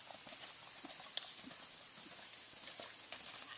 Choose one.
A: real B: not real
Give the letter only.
A